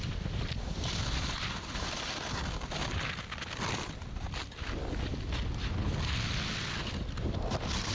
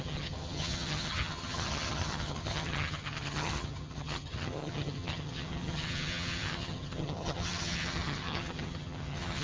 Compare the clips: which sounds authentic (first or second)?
first